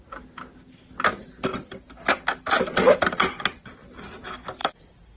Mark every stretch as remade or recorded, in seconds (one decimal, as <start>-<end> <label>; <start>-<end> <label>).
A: 0.0-4.6 recorded; 4.6-5.2 remade